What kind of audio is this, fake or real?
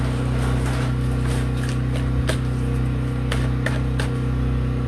real